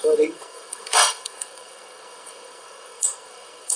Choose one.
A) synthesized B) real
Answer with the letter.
A